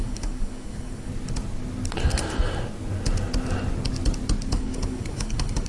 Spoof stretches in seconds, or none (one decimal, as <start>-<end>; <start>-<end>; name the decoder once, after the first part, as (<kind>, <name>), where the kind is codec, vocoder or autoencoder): 0.0-1.1 (codec, DAC); 4.5-5.7